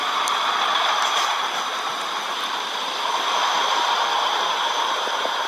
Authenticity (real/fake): fake